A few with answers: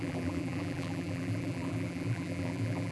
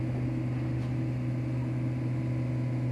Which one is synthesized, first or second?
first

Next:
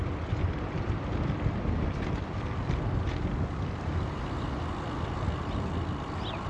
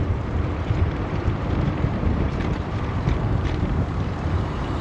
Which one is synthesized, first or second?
second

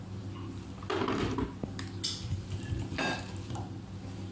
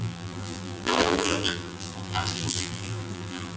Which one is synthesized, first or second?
second